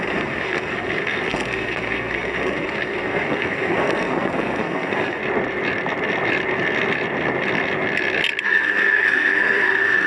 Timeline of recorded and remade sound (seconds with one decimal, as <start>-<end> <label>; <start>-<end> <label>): 0.0-5.2 remade; 5.2-8.4 recorded; 8.4-10.1 remade